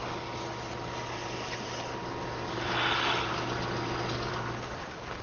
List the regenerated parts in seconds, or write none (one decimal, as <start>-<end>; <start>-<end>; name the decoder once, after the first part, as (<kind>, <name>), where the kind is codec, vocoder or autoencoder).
none

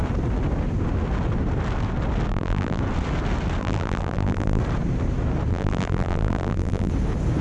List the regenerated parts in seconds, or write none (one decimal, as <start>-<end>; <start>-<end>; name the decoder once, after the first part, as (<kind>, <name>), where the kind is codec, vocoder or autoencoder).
2.3-2.8 (vocoder, BigVGAN v2); 3.6-4.6; 5.5-6.9

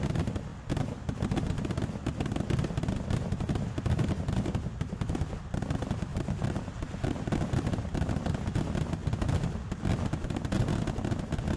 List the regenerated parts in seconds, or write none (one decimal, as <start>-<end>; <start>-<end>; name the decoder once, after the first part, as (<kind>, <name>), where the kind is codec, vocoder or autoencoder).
6.1-6.7 (vocoder, BigVGAN v2)

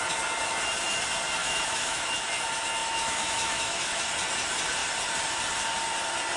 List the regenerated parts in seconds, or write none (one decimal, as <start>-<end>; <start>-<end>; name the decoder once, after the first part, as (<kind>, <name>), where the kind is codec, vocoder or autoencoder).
1.4-2.3 (autoencoder, DAC-VAE); 2.8-4.0